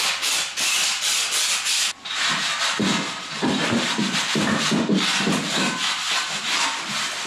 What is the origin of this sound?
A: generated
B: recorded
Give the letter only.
A